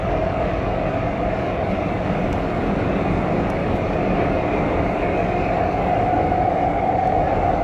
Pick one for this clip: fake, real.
fake